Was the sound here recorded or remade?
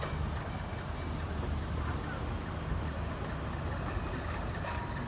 recorded